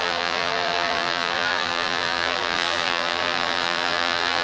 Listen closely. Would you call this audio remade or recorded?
remade